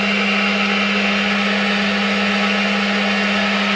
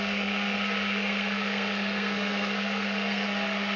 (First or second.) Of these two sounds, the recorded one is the first